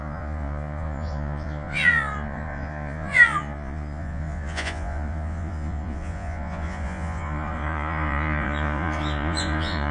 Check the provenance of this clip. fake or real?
fake